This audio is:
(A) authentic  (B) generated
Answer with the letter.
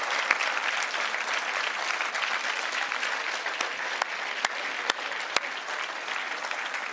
A